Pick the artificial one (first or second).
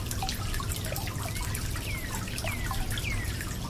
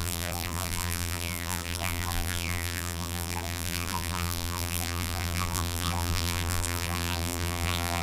second